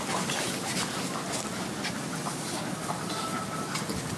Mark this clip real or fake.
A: real